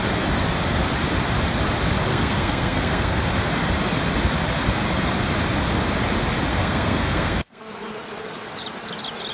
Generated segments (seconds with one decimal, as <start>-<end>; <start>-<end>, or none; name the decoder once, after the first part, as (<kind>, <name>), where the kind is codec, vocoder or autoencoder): 2.1-3.2 (codec, SNAC); 6.5-7.6